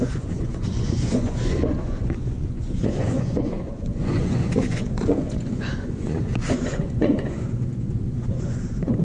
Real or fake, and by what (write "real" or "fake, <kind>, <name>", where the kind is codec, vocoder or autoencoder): fake, vocoder, Vocos